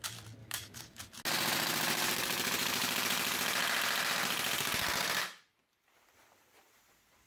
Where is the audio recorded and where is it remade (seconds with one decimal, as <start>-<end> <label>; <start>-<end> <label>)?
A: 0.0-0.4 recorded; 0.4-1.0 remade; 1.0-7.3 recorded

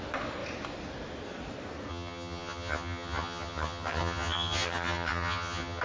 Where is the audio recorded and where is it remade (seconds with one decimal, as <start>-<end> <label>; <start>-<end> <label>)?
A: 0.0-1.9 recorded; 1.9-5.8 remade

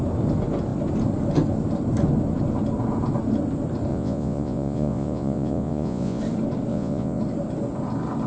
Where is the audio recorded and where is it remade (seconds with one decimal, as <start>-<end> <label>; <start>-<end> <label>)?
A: 0.0-3.9 recorded; 3.9-6.2 remade; 6.2-6.7 recorded; 6.7-7.2 remade; 7.2-8.3 recorded